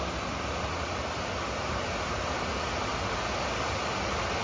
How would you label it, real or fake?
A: real